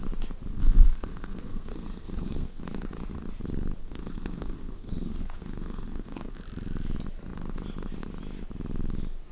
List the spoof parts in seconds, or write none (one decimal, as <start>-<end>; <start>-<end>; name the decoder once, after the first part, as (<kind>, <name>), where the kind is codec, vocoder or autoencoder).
0.5-2.6 (codec, SNAC); 3.8-6.4